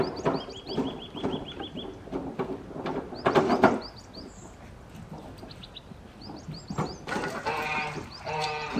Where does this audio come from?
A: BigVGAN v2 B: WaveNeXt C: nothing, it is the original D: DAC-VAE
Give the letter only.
C